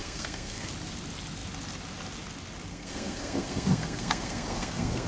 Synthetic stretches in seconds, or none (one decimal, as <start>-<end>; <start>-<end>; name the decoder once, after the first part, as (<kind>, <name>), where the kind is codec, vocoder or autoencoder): 0.0-0.7 (codec, SNAC); 2.7-5.1